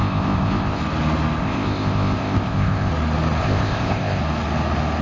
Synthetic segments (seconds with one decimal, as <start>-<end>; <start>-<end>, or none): 0.0-0.8; 1.4-2.9; 3.4-4.2